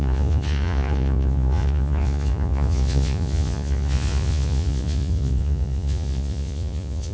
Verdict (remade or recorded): remade